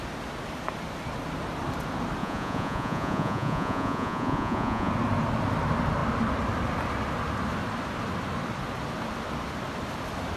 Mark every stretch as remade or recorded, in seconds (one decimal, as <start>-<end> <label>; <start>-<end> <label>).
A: 0.0-2.2 recorded; 2.2-4.9 remade; 4.9-10.4 recorded